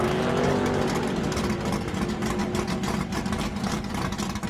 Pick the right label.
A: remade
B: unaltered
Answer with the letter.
B